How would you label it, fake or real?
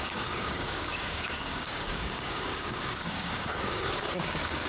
fake